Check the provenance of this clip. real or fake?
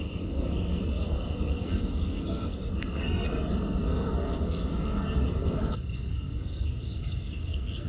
fake